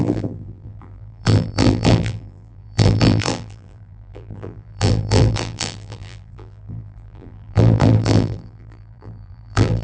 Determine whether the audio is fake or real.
fake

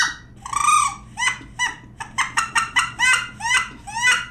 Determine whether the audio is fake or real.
real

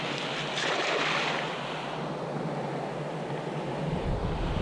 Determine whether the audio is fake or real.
real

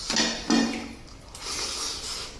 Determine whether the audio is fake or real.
real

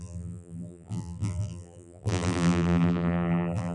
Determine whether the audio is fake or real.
fake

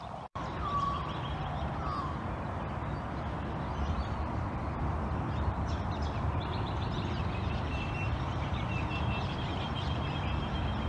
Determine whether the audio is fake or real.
fake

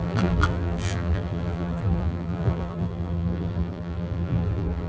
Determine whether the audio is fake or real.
fake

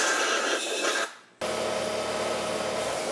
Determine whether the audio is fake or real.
real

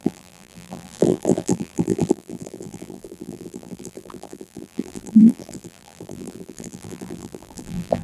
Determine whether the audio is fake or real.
fake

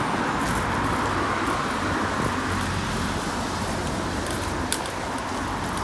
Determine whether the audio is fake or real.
real